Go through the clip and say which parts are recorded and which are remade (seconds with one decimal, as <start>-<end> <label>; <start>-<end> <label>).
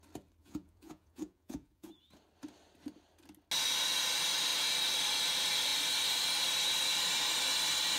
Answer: 0.0-0.4 recorded; 0.4-2.1 remade; 2.1-8.0 recorded